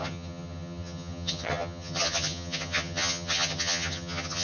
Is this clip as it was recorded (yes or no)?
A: no